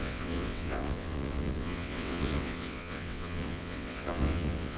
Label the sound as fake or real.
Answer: fake